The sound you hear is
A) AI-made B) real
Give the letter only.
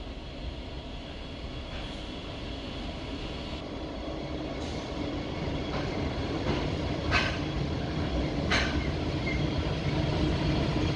A